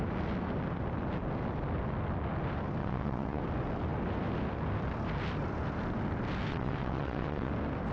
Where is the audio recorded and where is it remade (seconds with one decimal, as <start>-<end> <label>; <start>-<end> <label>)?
0.0-2.8 recorded; 2.8-3.4 remade; 3.4-6.5 recorded; 6.5-7.5 remade; 7.5-7.9 recorded